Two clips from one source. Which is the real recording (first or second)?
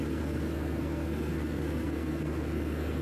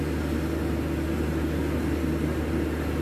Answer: second